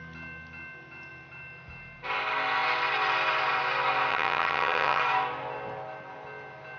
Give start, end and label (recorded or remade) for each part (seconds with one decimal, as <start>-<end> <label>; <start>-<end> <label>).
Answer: 0.0-4.1 recorded; 4.1-5.0 remade; 5.0-6.8 recorded